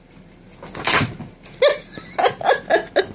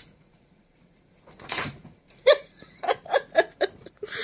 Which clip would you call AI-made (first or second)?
second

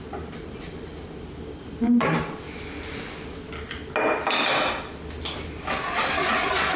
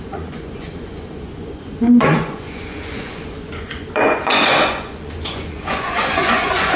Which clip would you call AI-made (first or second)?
second